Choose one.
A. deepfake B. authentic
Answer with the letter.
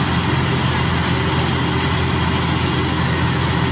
B